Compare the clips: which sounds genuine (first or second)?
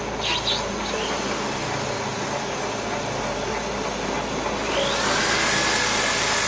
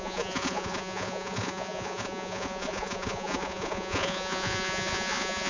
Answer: first